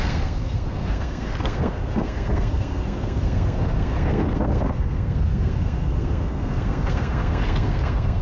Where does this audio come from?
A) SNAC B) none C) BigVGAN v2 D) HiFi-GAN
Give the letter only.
A